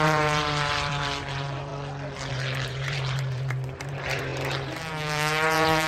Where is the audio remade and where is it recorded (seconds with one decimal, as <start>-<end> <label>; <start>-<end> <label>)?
0.0-1.7 remade; 1.7-2.3 recorded; 2.3-5.9 remade